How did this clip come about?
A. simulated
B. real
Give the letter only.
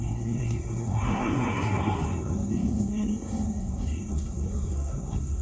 A